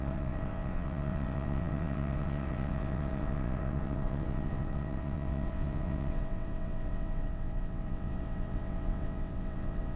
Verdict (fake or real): fake